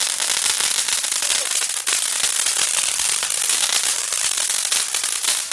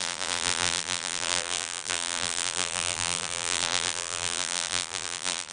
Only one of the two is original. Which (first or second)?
first